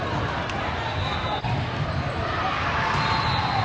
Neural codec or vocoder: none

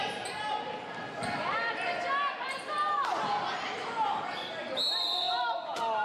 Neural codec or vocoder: none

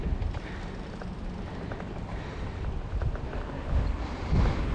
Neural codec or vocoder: none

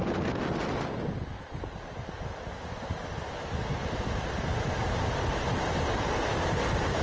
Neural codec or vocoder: none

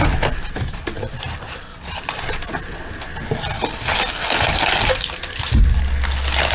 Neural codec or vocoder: none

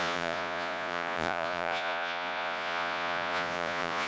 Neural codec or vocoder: vocoder, Vocos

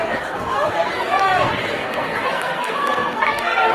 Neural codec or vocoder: codec, SNAC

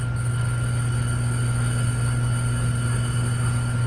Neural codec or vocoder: none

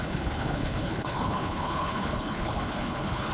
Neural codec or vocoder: codec, HILCodec